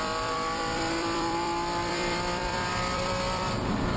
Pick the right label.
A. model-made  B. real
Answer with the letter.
A